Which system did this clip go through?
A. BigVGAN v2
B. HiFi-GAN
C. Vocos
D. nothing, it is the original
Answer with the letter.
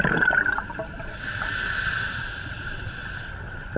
D